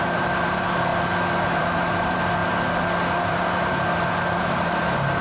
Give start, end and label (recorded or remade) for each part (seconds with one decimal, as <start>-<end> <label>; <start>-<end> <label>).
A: 0.0-0.9 remade; 0.9-1.5 recorded; 1.5-2.4 remade; 2.4-3.2 recorded; 3.2-5.2 remade